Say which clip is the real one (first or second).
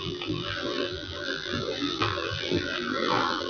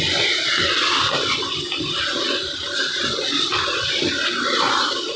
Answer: second